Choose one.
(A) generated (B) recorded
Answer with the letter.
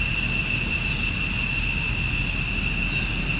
B